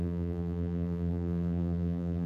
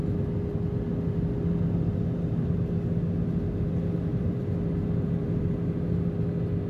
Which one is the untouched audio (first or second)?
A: second